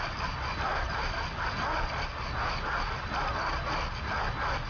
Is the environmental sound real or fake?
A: real